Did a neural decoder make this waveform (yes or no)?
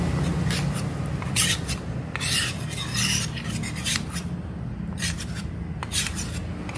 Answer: no